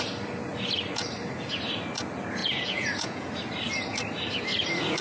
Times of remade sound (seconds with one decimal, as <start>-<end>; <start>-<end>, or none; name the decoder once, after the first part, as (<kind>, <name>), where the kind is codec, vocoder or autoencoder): 2.4-3.3 (vocoder, Vocos)